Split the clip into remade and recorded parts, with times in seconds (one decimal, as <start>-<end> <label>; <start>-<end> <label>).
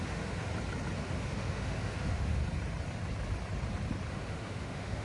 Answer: 0.0-0.5 remade; 0.5-1.0 recorded; 1.0-2.4 remade; 2.4-4.1 recorded; 4.1-5.0 remade